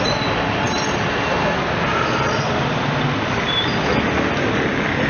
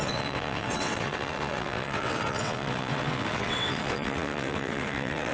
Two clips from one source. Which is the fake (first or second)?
second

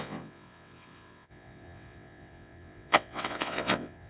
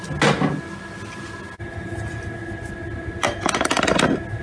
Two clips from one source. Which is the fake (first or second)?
first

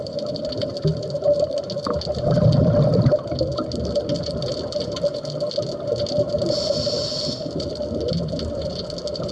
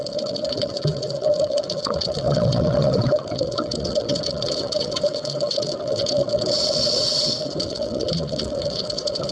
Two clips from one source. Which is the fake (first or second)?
second